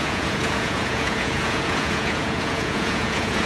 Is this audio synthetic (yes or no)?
yes